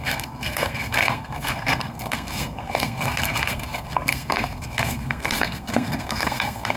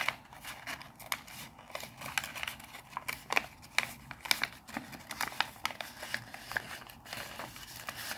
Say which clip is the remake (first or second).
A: first